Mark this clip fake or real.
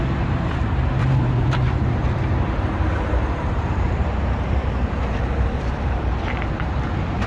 fake